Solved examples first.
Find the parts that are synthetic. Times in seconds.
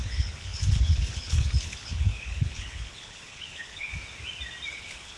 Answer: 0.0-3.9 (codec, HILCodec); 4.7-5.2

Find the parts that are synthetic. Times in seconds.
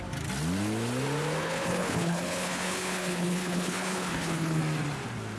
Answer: 1.4-4.6 (codec, HILCodec)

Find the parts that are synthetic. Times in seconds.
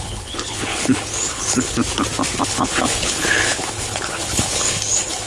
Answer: 0.0-1.8 (codec, HILCodec); 2.4-5.3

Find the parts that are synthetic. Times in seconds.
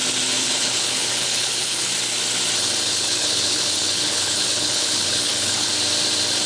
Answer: 0.4-1.9 (codec, HILCodec); 2.9-5.7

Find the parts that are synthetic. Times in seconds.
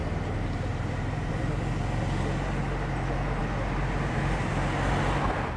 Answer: none